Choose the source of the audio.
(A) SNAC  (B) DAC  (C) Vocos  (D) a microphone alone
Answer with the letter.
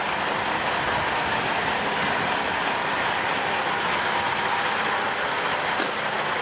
D